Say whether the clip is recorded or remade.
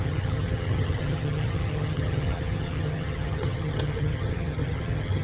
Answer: remade